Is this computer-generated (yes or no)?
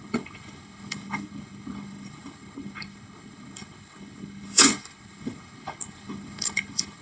yes